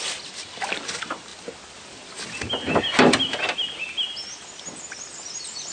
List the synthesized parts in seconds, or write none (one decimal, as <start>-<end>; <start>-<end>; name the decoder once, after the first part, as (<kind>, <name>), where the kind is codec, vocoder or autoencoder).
none